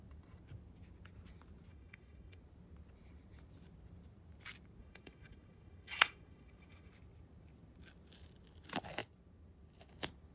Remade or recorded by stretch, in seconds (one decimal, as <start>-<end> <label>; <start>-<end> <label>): 0.0-1.7 recorded; 1.7-2.4 remade; 2.4-4.8 recorded; 4.8-6.9 remade; 6.9-10.3 recorded